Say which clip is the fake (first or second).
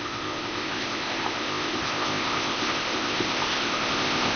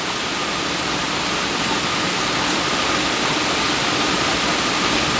first